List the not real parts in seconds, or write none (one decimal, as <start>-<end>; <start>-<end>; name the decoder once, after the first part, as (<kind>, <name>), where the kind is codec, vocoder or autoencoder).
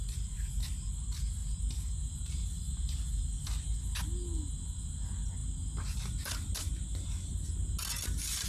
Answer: none